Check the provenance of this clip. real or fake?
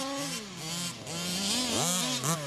real